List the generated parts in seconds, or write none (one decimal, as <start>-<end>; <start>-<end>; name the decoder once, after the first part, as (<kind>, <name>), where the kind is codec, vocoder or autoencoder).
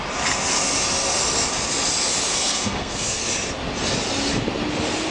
2.3-3.2 (codec, SNAC)